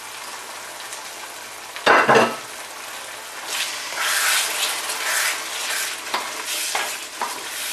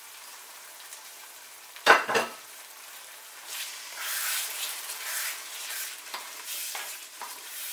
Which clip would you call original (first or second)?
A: first